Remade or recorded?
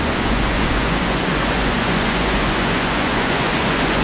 remade